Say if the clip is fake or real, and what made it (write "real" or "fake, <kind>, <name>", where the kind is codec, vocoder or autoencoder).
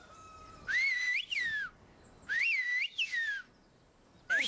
fake, vocoder, BigVGAN v2